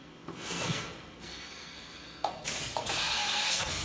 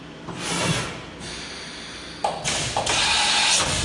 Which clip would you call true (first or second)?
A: second